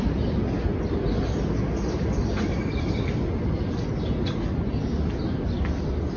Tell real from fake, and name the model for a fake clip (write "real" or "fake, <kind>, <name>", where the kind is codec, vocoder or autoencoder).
real